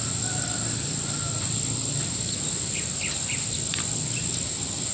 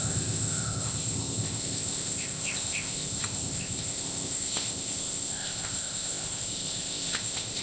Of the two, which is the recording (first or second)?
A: first